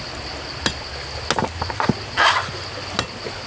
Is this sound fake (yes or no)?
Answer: no